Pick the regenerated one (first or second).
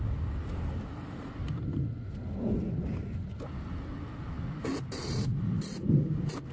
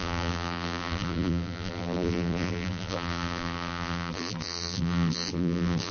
second